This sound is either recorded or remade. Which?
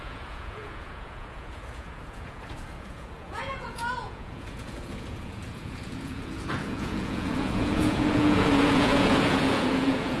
remade